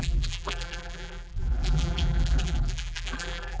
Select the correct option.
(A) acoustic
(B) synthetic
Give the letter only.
B